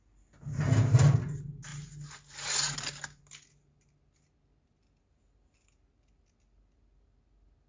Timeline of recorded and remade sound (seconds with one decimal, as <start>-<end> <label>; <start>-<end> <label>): 0.0-7.7 recorded